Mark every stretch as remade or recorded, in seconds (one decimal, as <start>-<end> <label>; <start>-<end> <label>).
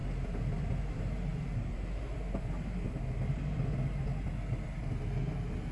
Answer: 0.0-5.7 recorded